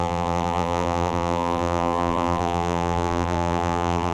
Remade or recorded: remade